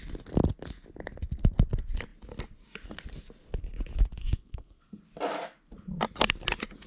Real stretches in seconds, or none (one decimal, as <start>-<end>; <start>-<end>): 0.0-4.2; 5.0-6.9